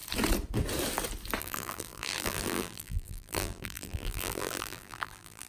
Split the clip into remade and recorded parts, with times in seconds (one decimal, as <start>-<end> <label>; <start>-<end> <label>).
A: 0.0-1.4 recorded; 1.4-5.5 remade